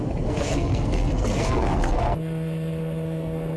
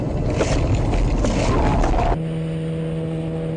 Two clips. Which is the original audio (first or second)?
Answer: second